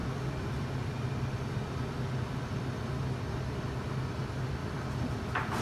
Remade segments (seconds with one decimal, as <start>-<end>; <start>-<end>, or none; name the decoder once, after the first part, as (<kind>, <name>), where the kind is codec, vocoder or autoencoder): 0.0-2.6 (vocoder, BigVGAN v2); 4.6-5.6